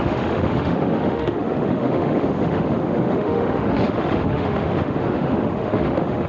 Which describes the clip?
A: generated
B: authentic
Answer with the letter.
A